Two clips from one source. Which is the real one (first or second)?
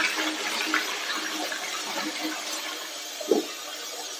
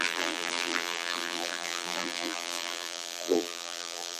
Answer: first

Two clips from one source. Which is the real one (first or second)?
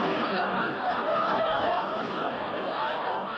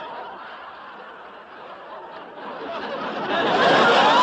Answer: second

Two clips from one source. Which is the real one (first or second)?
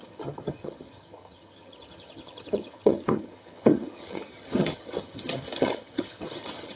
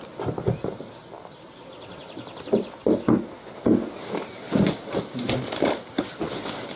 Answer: second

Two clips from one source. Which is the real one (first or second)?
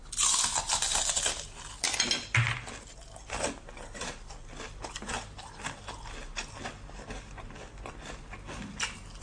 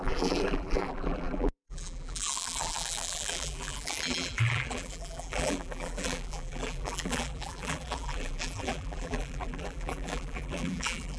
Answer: first